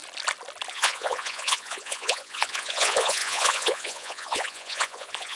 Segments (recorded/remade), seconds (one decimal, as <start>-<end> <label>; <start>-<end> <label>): 0.0-0.7 recorded; 0.7-5.4 remade